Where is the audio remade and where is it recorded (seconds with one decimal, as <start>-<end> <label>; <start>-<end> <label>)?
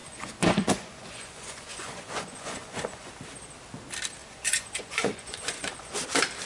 0.0-3.1 remade; 3.1-4.2 recorded; 4.2-6.0 remade; 6.0-6.5 recorded